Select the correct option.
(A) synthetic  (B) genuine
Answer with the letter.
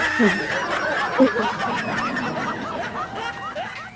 B